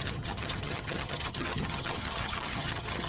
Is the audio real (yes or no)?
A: no